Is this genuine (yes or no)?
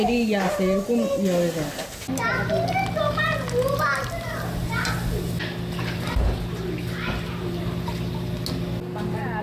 yes